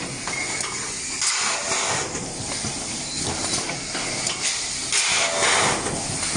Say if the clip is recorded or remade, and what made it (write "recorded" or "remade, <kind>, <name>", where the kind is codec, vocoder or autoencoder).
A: recorded